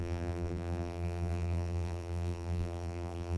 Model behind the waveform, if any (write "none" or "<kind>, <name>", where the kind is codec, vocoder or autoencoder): vocoder, BigVGAN v2